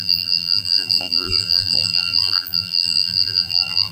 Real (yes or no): no